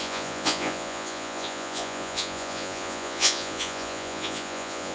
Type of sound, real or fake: fake